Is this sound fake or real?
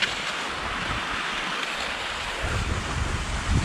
real